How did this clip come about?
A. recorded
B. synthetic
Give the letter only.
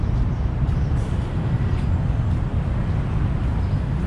A